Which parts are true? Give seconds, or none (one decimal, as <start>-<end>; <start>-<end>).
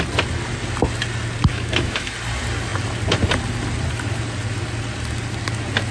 0.0-1.5; 2.1-5.9